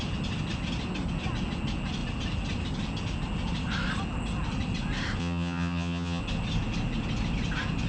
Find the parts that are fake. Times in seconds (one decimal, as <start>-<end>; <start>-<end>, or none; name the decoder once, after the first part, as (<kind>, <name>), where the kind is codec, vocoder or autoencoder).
5.2-6.2 (vocoder, HiFi-GAN)